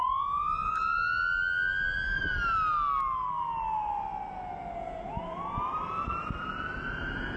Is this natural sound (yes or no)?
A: yes